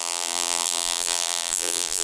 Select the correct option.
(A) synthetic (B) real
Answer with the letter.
A